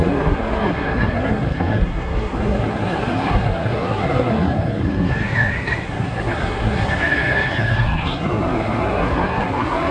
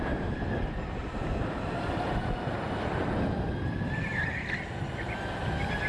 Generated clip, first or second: first